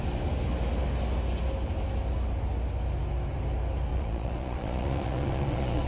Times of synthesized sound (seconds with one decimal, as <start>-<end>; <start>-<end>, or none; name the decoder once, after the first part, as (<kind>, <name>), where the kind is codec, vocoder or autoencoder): 3.9-5.9 (vocoder, Vocos)